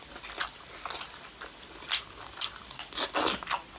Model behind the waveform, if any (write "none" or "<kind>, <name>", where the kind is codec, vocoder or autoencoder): none